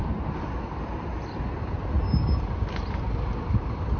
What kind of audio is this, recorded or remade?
recorded